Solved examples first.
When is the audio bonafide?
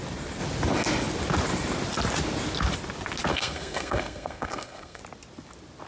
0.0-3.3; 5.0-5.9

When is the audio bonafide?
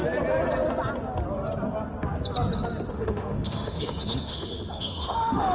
0.0-2.9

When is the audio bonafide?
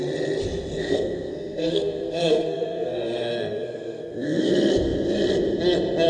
0.0-0.8; 4.5-6.1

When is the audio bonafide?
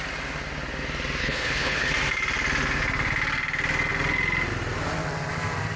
0.0-1.2; 1.9-5.8